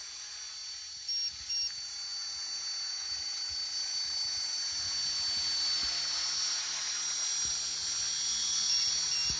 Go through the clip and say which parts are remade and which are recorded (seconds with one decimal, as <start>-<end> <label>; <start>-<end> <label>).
0.0-2.9 recorded; 2.9-4.6 remade; 4.6-9.4 recorded